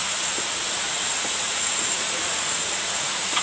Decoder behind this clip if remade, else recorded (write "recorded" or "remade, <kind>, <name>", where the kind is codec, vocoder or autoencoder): remade, vocoder, Vocos